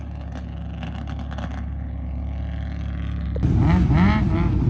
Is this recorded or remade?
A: recorded